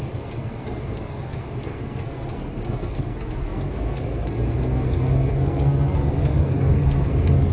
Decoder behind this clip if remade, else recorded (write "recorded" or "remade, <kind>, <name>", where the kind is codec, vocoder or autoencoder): remade, codec, SNAC